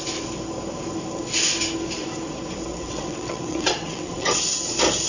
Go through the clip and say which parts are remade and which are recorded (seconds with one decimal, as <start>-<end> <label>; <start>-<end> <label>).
0.0-2.7 recorded; 2.7-4.4 remade; 4.4-5.1 recorded